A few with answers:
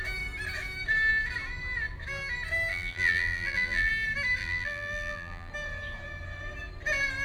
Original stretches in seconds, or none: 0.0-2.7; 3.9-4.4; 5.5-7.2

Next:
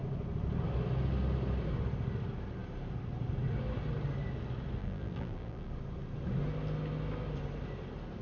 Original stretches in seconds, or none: 0.0-4.8; 5.7-8.2

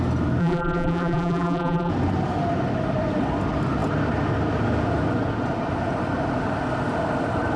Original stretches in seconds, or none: 0.0-0.4; 1.9-7.6

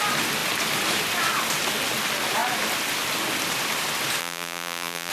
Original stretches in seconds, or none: 0.0-4.2

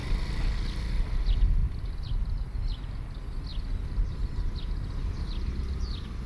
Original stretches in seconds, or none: 0.0-6.3

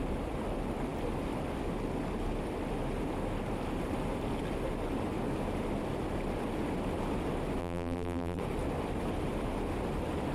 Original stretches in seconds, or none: 0.0-7.6; 8.4-10.3